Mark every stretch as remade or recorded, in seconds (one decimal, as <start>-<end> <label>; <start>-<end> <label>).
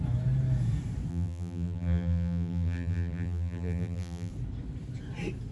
0.0-1.1 recorded; 1.1-4.3 remade; 4.3-5.5 recorded